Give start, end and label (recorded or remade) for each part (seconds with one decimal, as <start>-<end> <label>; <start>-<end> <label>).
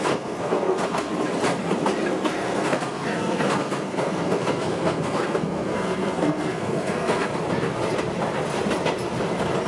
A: 0.0-1.1 remade; 1.1-2.1 recorded; 2.1-7.3 remade; 7.3-9.7 recorded